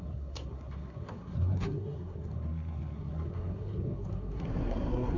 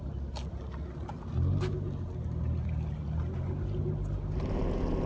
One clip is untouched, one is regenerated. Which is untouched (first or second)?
second